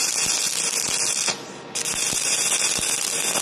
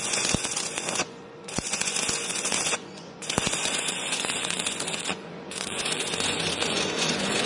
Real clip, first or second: first